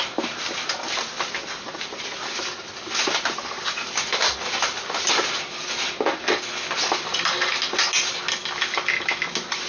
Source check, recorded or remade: recorded